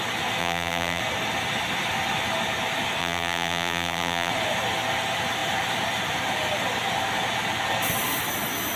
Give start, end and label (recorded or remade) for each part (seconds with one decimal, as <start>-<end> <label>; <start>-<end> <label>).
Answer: 0.0-0.4 recorded; 0.4-1.0 remade; 1.0-3.0 recorded; 3.0-4.3 remade; 4.3-8.8 recorded

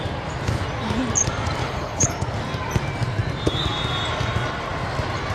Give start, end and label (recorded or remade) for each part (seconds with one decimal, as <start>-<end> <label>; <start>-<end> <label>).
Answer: 0.0-1.6 recorded; 1.6-2.1 remade; 2.1-5.3 recorded

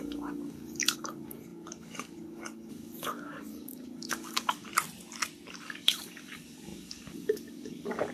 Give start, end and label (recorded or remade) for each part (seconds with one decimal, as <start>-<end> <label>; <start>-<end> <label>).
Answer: 0.0-4.7 remade; 4.7-5.5 recorded; 5.5-8.1 remade

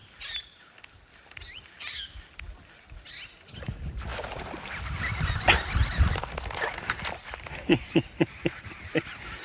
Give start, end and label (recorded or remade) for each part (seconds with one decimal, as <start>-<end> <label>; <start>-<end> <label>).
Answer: 0.0-9.4 recorded

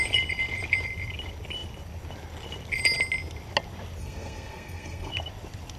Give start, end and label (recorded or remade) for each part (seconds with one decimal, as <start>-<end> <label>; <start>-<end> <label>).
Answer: 0.0-4.0 recorded; 4.0-5.1 remade; 5.1-5.8 recorded

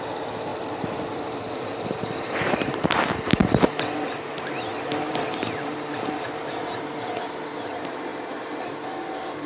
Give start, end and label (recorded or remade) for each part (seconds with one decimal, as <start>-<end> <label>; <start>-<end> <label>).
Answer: 0.0-9.5 remade

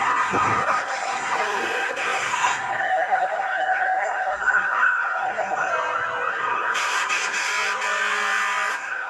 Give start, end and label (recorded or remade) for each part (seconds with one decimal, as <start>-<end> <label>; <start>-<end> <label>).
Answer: 0.0-5.7 remade; 5.7-6.3 recorded; 6.3-7.5 remade; 7.5-8.7 recorded; 8.7-9.1 remade

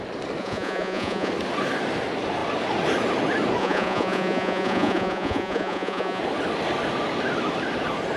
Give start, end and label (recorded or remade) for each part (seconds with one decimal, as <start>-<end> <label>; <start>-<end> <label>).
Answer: 0.0-0.4 recorded; 0.4-1.3 remade; 1.3-3.6 recorded; 3.6-6.2 remade; 6.2-8.2 recorded